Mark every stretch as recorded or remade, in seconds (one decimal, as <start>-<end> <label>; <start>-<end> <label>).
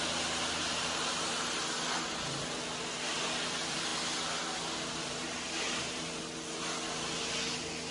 0.0-0.6 recorded; 0.6-1.6 remade; 1.6-7.9 recorded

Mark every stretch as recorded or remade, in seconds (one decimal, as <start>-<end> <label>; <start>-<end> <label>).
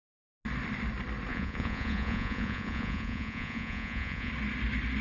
0.0-1.3 recorded; 1.3-4.3 remade; 4.3-5.0 recorded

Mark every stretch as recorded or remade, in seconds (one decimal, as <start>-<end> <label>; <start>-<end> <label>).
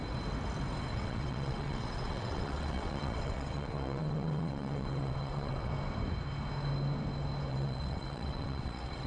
0.0-0.9 recorded; 0.9-5.7 remade; 5.7-7.5 recorded; 7.5-9.1 remade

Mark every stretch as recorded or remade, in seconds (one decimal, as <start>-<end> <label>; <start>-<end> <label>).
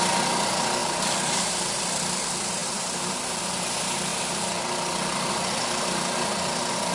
0.0-0.8 recorded; 0.8-1.5 remade; 1.5-2.6 recorded; 2.6-3.4 remade; 3.4-6.9 recorded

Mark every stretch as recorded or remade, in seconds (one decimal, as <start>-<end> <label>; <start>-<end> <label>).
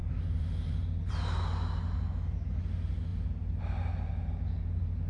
0.0-1.1 remade; 1.1-3.1 recorded; 3.1-3.6 remade; 3.6-5.1 recorded